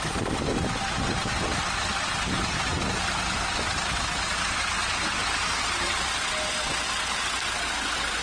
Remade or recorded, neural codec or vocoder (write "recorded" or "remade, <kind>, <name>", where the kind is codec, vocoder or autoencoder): recorded